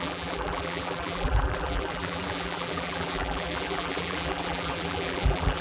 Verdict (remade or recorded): remade